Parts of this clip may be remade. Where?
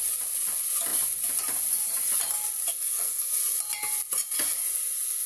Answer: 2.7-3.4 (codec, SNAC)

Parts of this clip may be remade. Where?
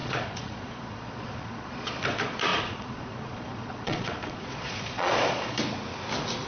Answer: 0.0-2.0 (vocoder, Vocos); 2.5-5.6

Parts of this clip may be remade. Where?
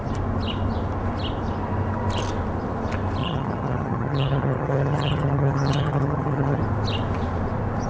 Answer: 3.2-6.6 (vocoder, HiFi-GAN)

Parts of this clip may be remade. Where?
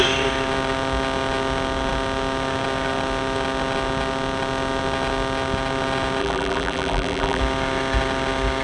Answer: 6.2-7.4 (vocoder, BigVGAN v2)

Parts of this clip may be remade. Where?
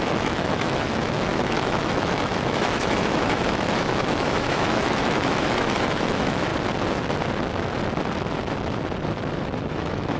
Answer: 0.0-6.5 (autoencoder, DAC-VAE); 9.7-10.2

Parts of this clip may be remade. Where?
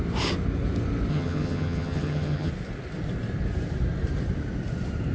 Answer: 1.1-2.5 (vocoder, HiFi-GAN)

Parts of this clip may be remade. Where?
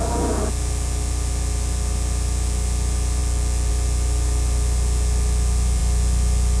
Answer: none